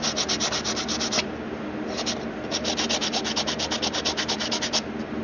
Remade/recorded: recorded